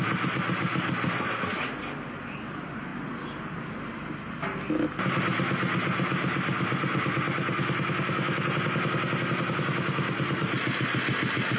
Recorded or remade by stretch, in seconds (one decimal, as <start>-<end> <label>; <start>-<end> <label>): 0.0-11.6 recorded